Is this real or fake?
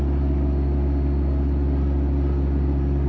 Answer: real